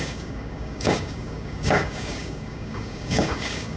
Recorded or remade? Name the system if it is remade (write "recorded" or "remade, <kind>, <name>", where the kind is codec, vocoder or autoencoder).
remade, codec, DAC